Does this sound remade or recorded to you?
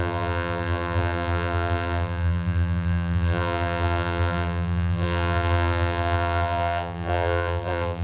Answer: remade